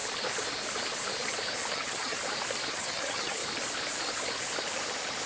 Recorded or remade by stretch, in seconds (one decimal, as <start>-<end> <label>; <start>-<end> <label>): 0.0-1.7 recorded; 1.7-2.2 remade; 2.2-2.7 recorded; 2.7-3.4 remade; 3.4-5.3 recorded